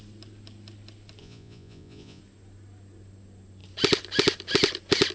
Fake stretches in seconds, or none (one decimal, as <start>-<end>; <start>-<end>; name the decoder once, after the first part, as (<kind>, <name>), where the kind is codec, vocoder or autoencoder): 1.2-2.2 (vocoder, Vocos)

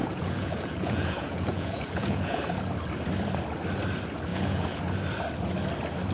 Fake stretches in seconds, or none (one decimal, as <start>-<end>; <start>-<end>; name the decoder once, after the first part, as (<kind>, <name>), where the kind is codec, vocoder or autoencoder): 0.0-2.4 (vocoder, Vocos); 4.3-4.8

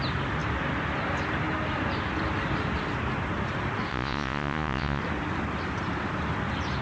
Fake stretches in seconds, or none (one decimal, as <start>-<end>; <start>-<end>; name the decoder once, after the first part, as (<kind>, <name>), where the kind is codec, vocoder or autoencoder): 3.9-5.0 (vocoder, Vocos)

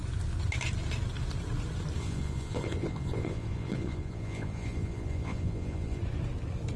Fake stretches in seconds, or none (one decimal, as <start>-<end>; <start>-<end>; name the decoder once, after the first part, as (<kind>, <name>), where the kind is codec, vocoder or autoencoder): 2.0-6.0 (vocoder, Vocos)

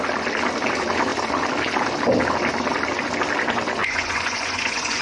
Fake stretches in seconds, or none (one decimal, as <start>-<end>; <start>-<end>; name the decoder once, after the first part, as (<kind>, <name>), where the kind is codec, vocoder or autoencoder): 3.8-5.0 (vocoder, Vocos)

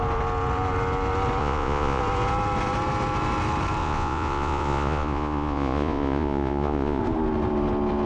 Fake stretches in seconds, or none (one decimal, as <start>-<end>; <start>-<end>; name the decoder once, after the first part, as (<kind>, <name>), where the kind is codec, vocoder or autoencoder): 1.4-2.0 (vocoder, Vocos); 3.8-7.0

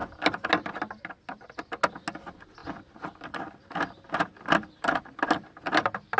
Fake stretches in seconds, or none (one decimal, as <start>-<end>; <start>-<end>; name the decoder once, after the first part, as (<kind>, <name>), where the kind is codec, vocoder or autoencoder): none